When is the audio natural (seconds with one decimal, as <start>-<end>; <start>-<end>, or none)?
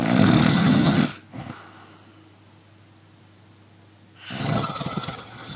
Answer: 0.0-0.5; 1.0-4.4